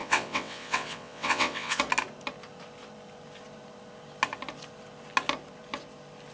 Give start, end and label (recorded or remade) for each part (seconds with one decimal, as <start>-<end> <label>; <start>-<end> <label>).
0.0-1.8 remade; 1.8-6.3 recorded